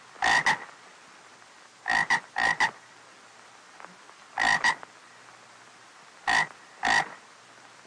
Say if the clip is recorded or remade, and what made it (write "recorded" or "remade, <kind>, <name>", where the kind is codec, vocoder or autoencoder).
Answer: recorded